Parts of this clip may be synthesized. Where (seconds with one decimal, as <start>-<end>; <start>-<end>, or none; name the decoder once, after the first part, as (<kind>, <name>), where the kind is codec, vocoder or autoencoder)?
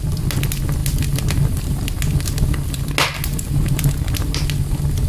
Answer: none